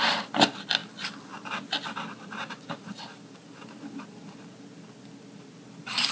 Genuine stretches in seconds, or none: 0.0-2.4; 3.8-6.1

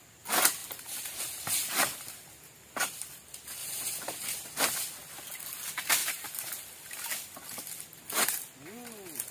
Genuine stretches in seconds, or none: 0.0-0.6; 3.1-3.6; 4.6-6.0; 6.5-9.3

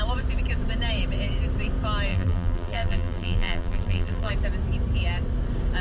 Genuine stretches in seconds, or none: 0.0-2.1; 4.3-5.8

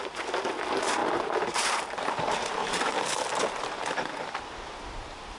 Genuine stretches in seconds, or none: 0.0-1.0; 3.0-5.4